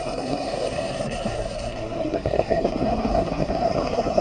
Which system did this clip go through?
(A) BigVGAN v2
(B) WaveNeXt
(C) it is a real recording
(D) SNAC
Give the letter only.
D